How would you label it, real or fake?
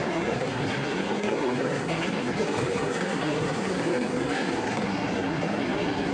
fake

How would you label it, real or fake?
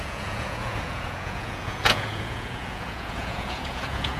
fake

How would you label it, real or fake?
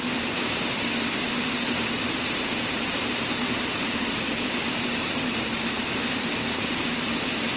fake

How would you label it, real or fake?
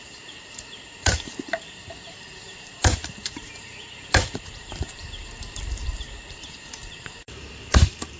fake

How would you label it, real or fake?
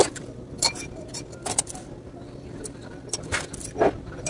fake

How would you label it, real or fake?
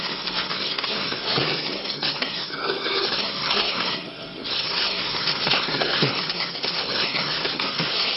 fake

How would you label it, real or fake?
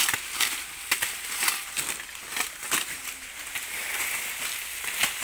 real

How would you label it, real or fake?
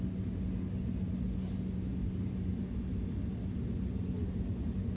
real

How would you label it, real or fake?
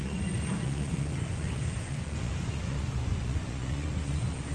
fake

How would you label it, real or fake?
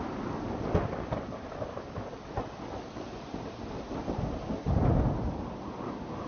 real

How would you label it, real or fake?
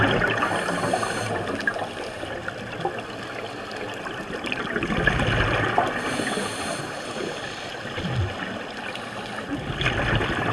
real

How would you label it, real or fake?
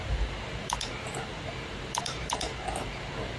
fake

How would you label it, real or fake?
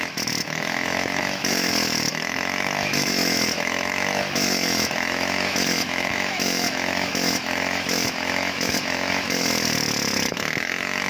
fake